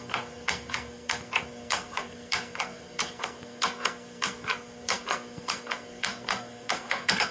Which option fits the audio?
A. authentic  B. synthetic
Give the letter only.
B